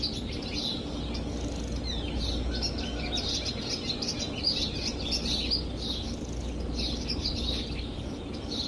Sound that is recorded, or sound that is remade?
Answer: recorded